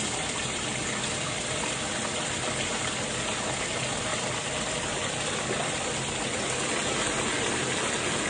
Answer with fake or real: real